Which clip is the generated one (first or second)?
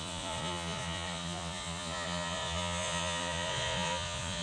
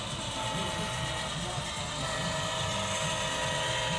first